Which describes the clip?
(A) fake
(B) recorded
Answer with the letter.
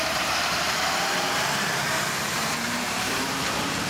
A